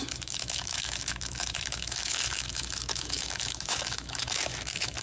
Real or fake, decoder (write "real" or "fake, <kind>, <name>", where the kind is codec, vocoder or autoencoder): fake, autoencoder, DAC-VAE